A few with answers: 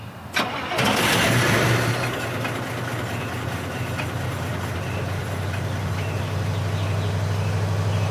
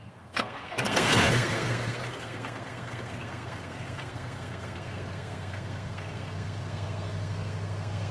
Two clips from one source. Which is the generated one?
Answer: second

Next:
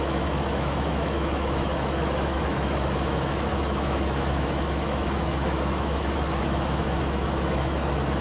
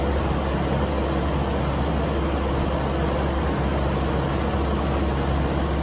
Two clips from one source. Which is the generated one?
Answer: first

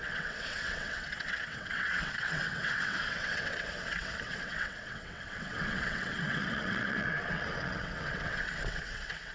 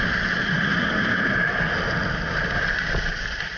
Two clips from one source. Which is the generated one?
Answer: first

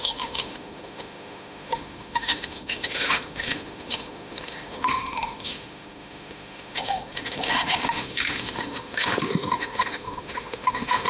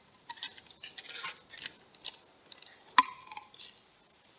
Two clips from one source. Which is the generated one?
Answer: first